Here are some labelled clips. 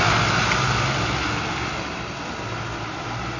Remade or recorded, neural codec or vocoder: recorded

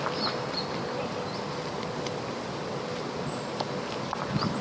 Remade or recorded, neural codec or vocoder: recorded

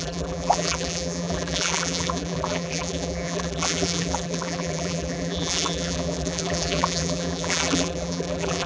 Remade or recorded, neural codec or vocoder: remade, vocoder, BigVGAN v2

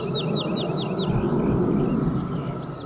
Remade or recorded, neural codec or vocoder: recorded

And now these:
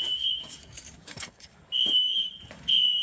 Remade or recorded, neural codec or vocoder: remade, codec, DAC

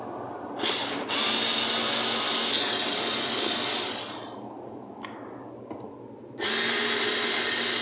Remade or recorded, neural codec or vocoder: recorded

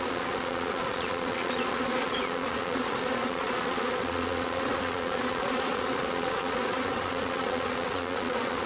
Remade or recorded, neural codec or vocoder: remade, vocoder, Vocos